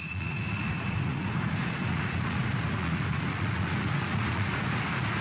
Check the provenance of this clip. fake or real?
fake